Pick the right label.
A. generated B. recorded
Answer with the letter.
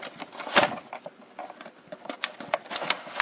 B